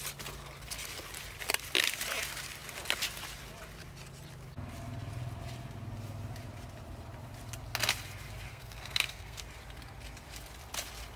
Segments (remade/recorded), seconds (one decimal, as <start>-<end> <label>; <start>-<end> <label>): 0.0-8.5 recorded; 8.5-9.4 remade; 9.4-11.2 recorded